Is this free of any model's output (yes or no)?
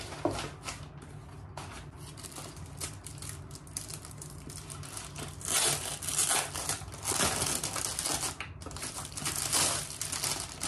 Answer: yes